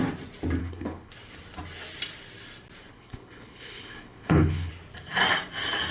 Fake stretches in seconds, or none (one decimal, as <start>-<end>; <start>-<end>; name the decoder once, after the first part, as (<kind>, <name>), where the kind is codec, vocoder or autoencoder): 0.6-1.1 (codec, HILCodec); 2.9-4.7